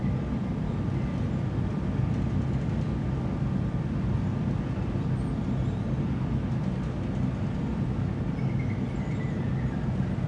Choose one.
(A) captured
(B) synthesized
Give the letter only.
A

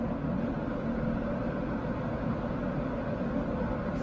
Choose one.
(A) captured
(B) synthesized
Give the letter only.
A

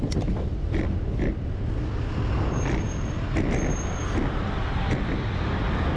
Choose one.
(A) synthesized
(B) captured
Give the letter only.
B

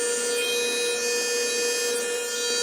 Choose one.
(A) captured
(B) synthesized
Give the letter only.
A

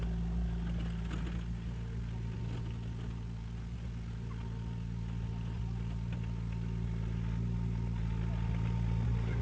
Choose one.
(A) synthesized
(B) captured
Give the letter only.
B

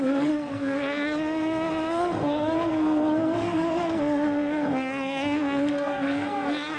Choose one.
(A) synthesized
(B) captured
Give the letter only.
A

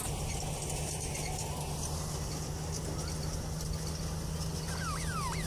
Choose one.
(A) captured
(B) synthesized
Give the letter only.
A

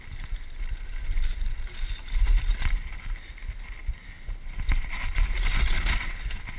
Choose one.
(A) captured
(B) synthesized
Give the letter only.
A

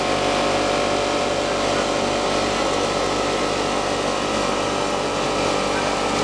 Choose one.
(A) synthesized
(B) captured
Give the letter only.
B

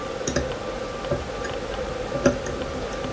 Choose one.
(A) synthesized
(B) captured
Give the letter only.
A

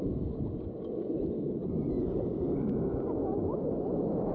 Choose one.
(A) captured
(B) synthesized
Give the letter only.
A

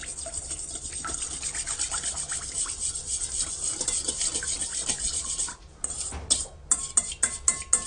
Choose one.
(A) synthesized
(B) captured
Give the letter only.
B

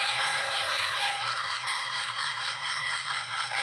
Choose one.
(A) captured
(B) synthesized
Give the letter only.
B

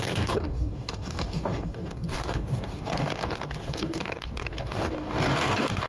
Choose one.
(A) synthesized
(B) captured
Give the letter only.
A